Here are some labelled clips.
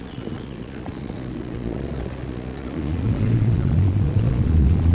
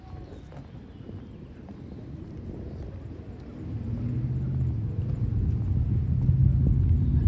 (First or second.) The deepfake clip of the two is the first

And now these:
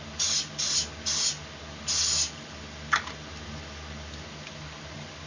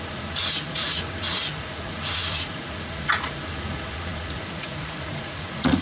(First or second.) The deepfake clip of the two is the second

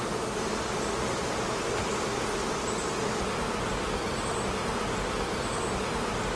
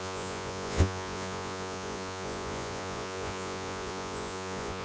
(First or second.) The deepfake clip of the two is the second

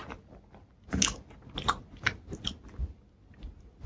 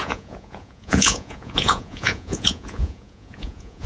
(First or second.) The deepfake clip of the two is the second